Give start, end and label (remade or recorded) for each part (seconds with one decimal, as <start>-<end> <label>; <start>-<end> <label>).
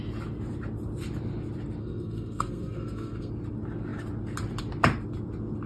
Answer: 0.0-1.8 recorded; 1.8-3.3 remade; 3.3-5.7 recorded